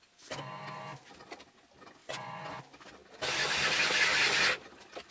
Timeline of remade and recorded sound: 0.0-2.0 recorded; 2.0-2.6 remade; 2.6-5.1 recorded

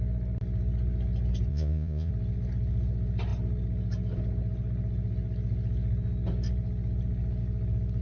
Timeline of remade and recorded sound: 0.0-1.5 recorded; 1.5-2.1 remade; 2.1-8.0 recorded